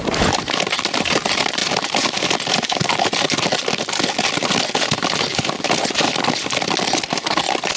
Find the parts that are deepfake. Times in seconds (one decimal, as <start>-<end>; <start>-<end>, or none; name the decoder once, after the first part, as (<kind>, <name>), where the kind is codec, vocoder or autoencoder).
none